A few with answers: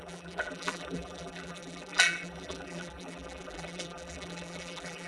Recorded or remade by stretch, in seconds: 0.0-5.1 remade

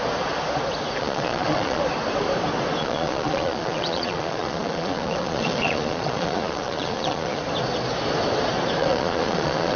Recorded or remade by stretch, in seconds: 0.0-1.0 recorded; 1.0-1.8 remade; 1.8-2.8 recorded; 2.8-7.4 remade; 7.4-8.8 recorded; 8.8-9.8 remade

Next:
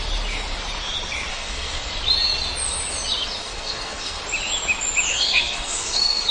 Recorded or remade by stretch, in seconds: 0.0-1.3 recorded; 1.3-1.9 remade; 1.9-3.4 recorded; 3.4-4.2 remade; 4.2-5.1 recorded; 5.1-6.3 remade

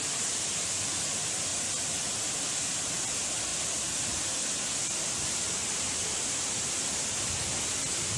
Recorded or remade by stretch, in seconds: 0.0-8.2 recorded

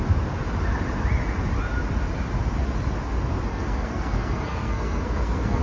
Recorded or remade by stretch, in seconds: 0.0-3.5 recorded; 3.5-5.6 remade

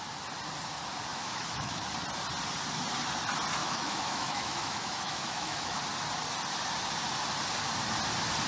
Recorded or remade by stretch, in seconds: 0.0-1.1 recorded; 1.1-1.8 remade; 1.8-3.6 recorded; 3.6-5.8 remade; 5.8-8.5 recorded

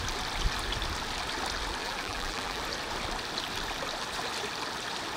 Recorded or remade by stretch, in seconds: 0.0-1.8 recorded; 1.8-2.6 remade; 2.6-5.2 recorded